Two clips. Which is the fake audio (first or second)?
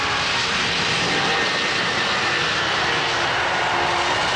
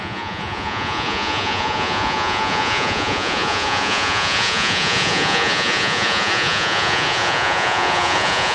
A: second